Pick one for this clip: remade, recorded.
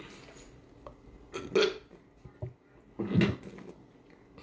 recorded